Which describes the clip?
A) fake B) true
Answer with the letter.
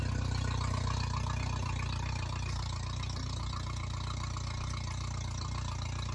B